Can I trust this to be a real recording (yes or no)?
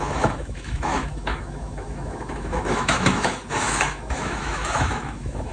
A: no